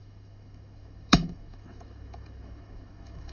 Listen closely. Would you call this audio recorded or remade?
remade